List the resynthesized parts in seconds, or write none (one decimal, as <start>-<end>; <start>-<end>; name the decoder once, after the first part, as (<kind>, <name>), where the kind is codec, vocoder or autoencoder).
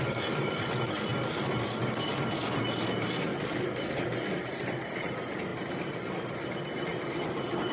0.0-7.7 (vocoder, BigVGAN v2)